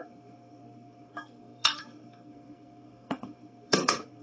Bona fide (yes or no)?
no